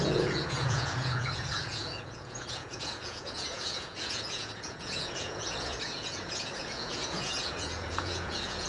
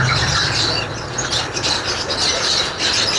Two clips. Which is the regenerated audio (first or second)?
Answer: first